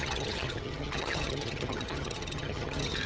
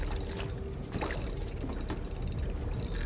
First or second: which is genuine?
second